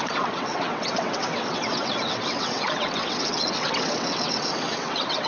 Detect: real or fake fake